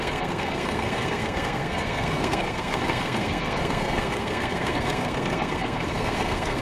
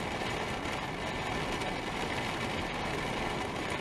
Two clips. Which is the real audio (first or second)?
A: second